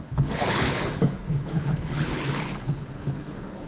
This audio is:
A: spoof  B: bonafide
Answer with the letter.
A